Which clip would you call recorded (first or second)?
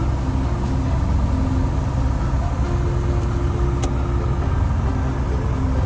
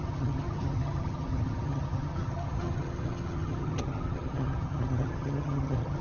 first